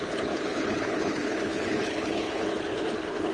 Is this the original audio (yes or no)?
no